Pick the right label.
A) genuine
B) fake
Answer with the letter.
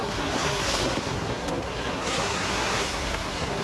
B